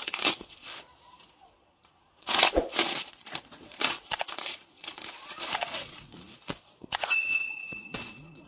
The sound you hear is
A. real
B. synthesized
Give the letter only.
B